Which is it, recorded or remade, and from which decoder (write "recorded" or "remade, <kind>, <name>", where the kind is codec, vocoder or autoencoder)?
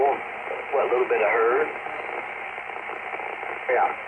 recorded